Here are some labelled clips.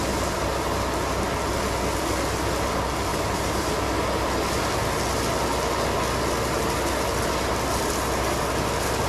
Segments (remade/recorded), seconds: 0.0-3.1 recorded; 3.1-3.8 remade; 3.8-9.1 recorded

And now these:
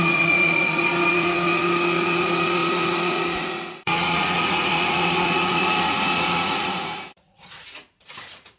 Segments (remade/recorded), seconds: 0.0-8.6 remade

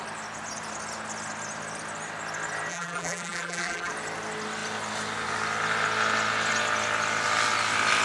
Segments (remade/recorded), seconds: 0.0-2.7 recorded; 2.7-3.9 remade; 3.9-8.0 recorded